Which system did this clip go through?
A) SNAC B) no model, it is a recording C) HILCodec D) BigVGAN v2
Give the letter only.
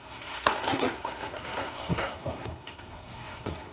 A